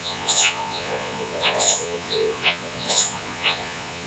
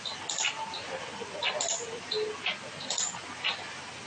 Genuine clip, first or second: second